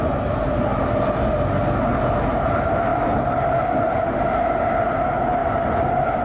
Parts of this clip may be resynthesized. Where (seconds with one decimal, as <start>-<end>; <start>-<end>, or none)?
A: none

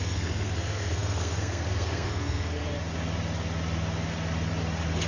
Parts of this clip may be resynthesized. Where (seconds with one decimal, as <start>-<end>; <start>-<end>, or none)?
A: 0.0-2.6